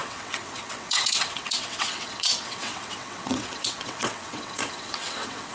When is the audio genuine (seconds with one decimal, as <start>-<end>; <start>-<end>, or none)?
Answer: none